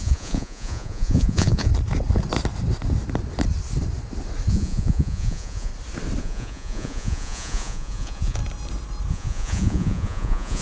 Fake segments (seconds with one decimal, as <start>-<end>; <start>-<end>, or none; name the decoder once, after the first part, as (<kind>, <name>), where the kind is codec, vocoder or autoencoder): 0.0-1.7 (vocoder, Vocos); 4.5-5.7; 6.2-8.4; 9.1-10.6